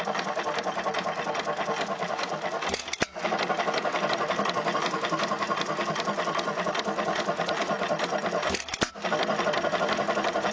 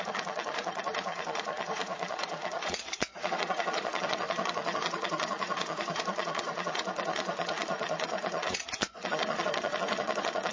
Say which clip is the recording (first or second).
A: first